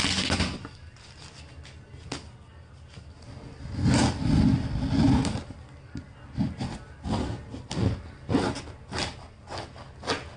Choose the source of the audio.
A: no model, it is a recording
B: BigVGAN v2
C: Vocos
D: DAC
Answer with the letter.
A